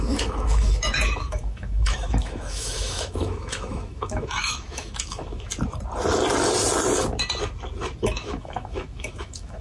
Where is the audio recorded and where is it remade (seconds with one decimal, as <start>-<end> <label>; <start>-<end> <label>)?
0.0-5.5 remade; 5.5-8.0 recorded; 8.0-9.6 remade